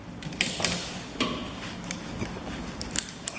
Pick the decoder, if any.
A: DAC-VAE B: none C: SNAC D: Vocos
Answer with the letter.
B